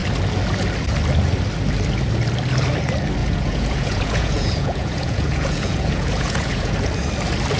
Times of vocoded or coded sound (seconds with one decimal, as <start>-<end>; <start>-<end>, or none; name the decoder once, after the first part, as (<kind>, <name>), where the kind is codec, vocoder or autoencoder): 3.2-6.7 (vocoder, Vocos)